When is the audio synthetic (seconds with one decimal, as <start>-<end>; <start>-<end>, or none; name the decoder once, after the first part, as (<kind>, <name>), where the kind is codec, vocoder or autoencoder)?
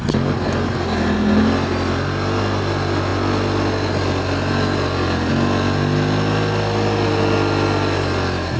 none